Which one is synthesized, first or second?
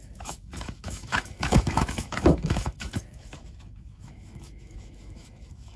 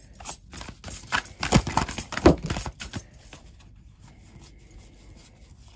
first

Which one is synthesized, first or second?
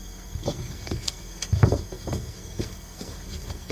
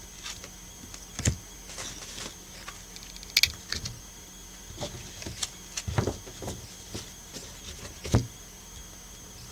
first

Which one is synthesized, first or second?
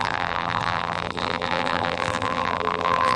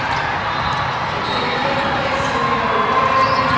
first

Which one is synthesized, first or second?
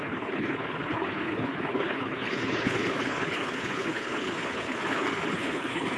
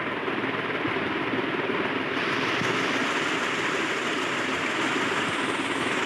first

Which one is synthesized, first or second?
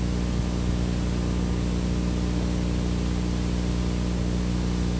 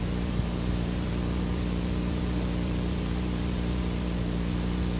second